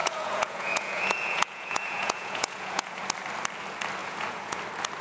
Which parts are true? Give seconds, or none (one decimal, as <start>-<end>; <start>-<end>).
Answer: 3.0-4.0; 4.6-5.0